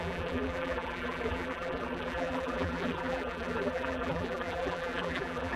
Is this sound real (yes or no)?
no